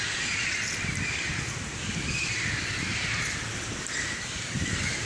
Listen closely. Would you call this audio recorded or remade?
recorded